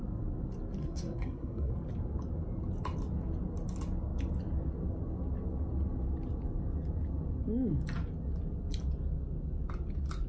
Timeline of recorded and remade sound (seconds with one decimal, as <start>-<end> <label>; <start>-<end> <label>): 0.0-0.8 recorded; 0.8-1.7 remade; 1.7-10.3 recorded